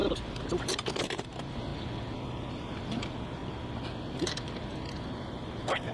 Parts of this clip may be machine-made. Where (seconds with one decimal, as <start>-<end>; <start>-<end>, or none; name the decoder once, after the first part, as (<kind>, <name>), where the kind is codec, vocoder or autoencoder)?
0.6-1.7 (vocoder, BigVGAN v2); 2.5-3.4; 4.1-5.9

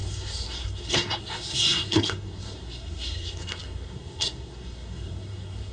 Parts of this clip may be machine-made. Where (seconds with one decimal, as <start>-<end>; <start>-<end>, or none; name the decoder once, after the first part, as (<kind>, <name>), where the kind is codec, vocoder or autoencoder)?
0.0-5.7 (codec, SNAC)

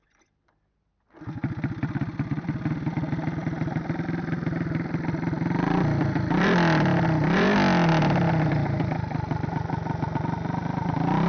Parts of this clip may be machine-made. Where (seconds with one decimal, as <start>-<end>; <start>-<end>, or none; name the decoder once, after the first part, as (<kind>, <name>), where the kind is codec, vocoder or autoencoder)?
none

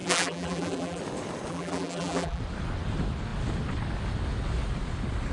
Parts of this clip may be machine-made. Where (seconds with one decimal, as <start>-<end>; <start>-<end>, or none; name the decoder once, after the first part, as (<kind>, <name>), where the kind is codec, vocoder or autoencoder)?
0.0-1.0 (vocoder, BigVGAN v2); 1.5-2.4

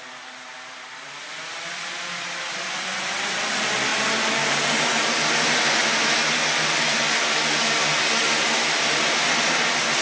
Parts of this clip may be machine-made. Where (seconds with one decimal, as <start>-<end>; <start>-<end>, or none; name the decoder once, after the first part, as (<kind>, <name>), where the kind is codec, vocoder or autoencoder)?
none

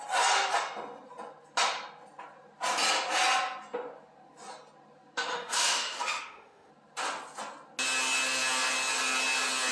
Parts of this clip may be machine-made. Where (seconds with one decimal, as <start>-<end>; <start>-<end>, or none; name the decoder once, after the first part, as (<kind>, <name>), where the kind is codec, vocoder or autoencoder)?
5.3-6.7 (autoencoder, DAC-VAE)

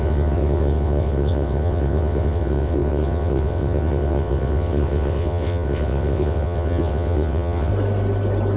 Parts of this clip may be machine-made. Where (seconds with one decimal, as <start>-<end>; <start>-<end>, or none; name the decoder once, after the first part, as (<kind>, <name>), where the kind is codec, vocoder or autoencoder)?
0.0-7.7 (vocoder, WaveNeXt)

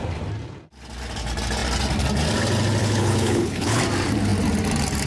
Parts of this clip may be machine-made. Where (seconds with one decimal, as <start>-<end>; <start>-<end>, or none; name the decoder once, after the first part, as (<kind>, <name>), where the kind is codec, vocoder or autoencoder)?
2.8-3.8 (codec, HILCodec)